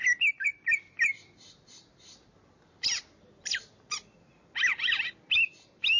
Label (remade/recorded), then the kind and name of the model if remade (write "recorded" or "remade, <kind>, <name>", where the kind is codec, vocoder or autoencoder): remade, vocoder, BigVGAN v2